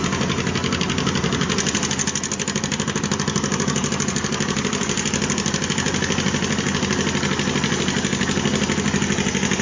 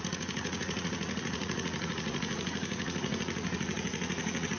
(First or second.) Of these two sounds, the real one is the first